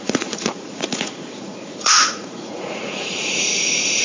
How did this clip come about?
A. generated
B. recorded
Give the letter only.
A